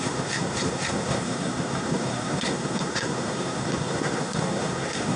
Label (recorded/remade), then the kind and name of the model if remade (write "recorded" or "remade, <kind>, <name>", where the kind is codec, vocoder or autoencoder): remade, codec, SNAC